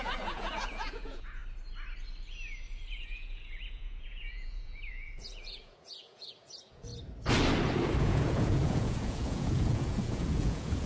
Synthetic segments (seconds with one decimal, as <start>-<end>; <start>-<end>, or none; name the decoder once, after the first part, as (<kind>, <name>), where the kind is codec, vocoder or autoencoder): 0.0-1.4 (vocoder, Vocos); 2.9-6.9; 8.0-10.9